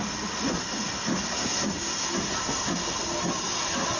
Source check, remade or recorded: recorded